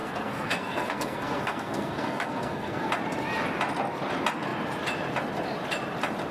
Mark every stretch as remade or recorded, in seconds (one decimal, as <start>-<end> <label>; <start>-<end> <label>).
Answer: 0.0-2.9 remade; 2.9-6.3 recorded